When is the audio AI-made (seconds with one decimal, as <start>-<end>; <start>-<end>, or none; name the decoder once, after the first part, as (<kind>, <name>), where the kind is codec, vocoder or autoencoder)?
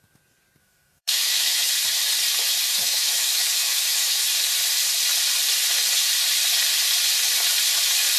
0.6-1.7 (autoencoder, DAC-VAE); 2.8-4.2